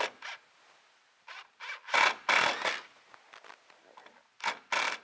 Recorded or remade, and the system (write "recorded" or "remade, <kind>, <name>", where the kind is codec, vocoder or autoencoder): recorded